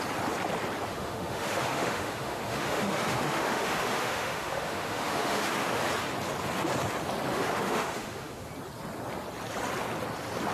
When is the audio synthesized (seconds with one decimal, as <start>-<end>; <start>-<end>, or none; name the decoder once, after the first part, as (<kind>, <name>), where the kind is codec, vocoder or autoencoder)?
0.9-5.8 (autoencoder, DAC-VAE); 7.3-8.5